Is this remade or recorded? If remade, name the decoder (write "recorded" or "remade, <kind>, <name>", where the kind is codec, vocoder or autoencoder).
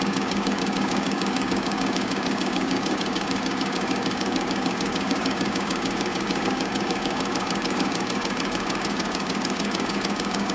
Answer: remade, codec, DAC